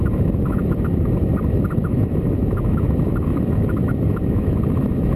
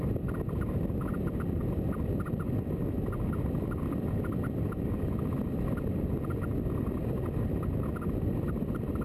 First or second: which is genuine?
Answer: second